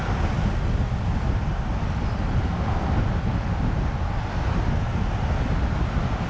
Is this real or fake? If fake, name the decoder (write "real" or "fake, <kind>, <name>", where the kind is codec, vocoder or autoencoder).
real